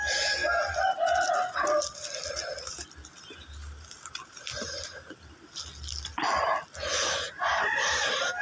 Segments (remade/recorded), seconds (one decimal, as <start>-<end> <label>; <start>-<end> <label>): 0.0-0.4 recorded; 0.4-3.1 remade; 3.1-3.6 recorded; 3.6-5.3 remade; 5.3-7.5 recorded; 7.5-8.4 remade